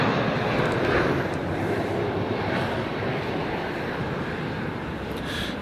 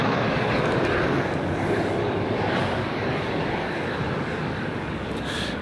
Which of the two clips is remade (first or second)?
second